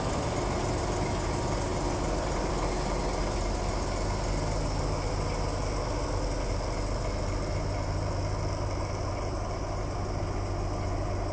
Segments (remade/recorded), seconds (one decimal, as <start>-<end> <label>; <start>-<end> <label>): 0.0-11.3 recorded